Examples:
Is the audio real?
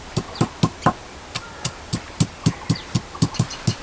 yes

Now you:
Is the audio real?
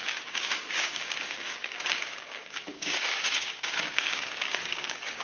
no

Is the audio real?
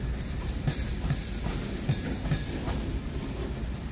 yes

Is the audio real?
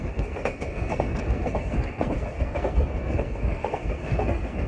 no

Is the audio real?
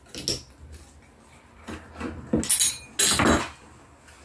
yes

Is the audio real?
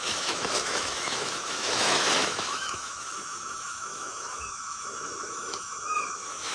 no